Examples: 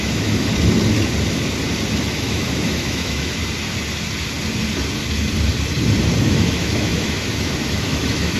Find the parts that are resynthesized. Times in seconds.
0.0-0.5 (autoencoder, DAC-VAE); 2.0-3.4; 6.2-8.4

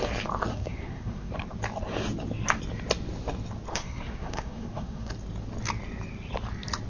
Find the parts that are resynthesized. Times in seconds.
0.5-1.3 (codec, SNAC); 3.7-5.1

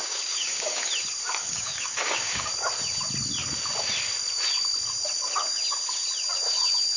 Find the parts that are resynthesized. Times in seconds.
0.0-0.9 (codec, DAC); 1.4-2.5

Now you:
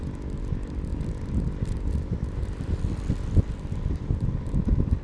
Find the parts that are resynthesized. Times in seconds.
none

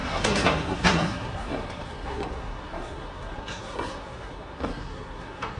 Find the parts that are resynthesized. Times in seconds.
0.0-5.6 (codec, SNAC)

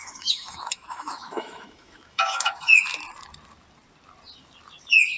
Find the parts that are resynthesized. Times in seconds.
0.0-2.8 (autoencoder, DAC-VAE)

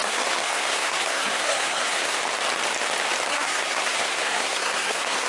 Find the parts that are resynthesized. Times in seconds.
0.0-2.2 (codec, SNAC); 3.3-5.3

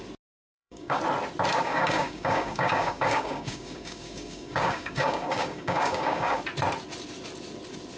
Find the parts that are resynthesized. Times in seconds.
0.5-1.0 (codec, DAC); 1.6-6.4